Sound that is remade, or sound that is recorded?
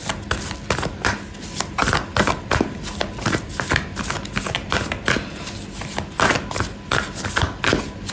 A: recorded